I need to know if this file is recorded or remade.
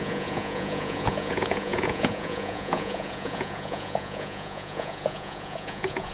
remade